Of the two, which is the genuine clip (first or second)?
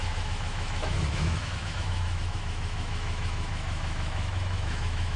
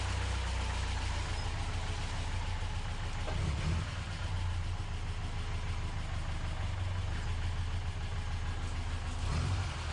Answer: second